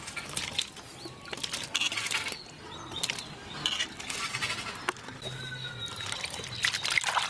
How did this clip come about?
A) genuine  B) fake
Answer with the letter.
A